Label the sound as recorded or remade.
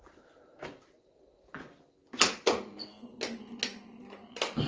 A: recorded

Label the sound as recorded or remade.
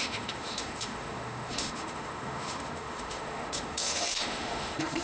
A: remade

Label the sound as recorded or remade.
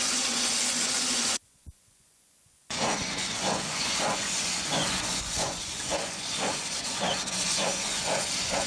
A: remade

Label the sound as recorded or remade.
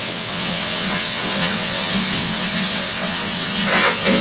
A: remade